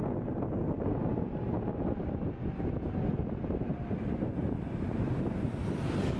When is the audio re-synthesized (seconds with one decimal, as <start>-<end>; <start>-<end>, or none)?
none